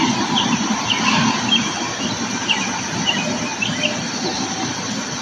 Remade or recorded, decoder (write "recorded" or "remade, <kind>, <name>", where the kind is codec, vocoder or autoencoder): recorded